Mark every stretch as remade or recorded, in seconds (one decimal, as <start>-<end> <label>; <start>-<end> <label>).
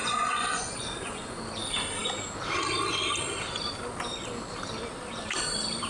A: 0.0-1.4 remade; 1.4-5.9 recorded